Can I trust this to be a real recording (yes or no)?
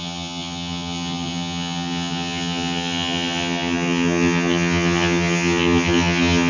no